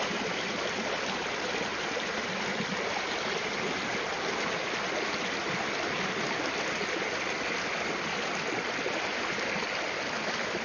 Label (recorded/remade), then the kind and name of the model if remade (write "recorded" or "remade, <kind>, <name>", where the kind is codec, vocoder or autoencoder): recorded